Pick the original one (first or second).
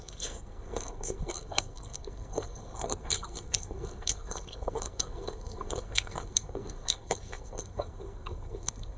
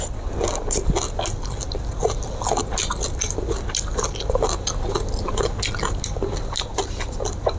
second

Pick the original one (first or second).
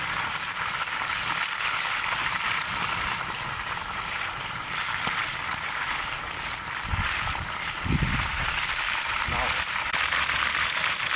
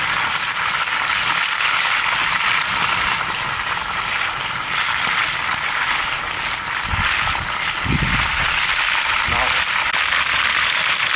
second